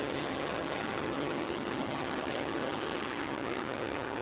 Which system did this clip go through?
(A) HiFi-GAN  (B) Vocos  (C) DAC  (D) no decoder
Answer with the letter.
A